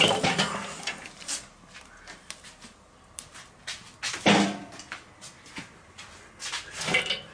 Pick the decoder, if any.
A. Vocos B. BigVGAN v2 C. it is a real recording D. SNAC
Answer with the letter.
C